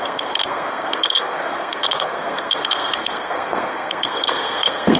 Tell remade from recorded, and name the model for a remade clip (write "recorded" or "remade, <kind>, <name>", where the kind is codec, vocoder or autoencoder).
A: remade, codec, SNAC